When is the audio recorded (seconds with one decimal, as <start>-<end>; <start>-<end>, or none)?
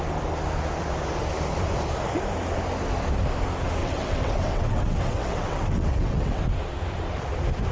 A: 0.0-3.8; 6.4-7.7